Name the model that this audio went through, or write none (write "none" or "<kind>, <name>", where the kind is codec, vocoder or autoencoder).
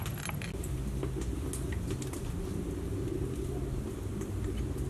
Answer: none